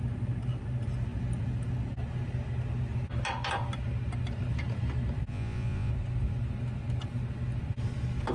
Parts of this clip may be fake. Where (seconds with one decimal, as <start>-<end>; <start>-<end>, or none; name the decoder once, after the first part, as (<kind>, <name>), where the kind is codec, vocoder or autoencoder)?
5.3-5.9 (vocoder, Vocos)